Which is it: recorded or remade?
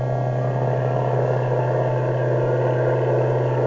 recorded